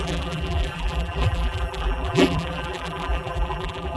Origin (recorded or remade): remade